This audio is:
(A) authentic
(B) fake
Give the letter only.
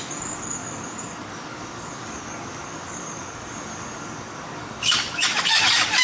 B